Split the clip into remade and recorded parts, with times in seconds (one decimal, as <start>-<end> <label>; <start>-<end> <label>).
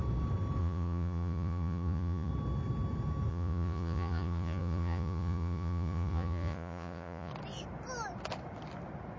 0.0-0.6 recorded; 0.6-2.3 remade; 2.3-3.3 recorded; 3.3-7.3 remade; 7.3-9.2 recorded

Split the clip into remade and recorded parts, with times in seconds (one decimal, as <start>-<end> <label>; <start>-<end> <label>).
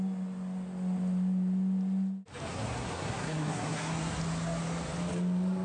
0.0-2.5 recorded; 2.5-4.2 remade; 4.2-5.6 recorded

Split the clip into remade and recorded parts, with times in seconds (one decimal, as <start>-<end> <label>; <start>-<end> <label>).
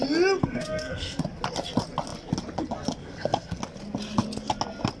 0.0-0.4 recorded; 0.4-1.2 remade; 1.2-3.0 recorded; 3.0-3.6 remade; 3.6-5.0 recorded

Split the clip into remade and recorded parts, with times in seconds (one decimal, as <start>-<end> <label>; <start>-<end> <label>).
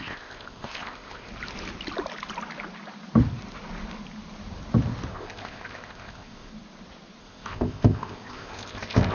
0.0-1.3 remade; 1.3-5.1 recorded; 5.1-6.5 remade; 6.5-7.2 recorded; 7.2-9.1 remade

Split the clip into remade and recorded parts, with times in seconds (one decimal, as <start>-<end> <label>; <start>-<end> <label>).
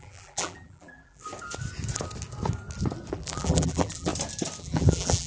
0.0-1.2 remade; 1.2-3.1 recorded; 3.1-4.1 remade; 4.1-4.6 recorded; 4.6-5.3 remade